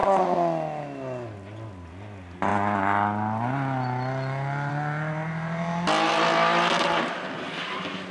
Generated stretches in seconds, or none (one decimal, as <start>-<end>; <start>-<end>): none